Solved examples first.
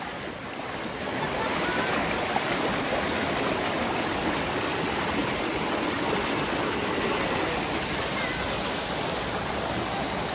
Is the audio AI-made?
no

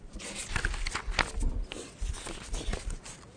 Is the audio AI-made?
no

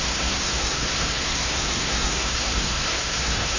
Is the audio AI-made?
yes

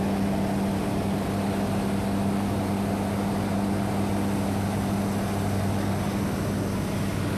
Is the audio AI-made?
no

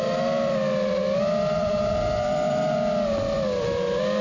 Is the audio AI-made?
no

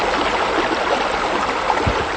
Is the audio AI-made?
no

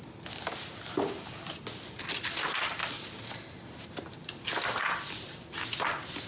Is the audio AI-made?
no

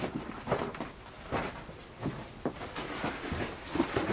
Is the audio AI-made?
no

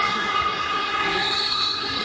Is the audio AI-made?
yes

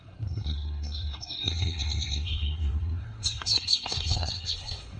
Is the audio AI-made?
yes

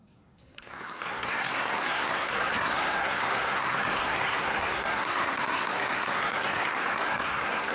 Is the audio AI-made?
yes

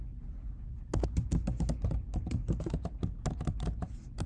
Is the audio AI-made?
no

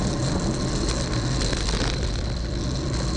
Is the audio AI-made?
no